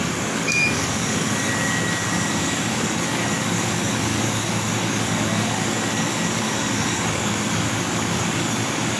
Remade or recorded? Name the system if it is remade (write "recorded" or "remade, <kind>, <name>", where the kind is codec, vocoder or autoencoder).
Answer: remade, codec, DAC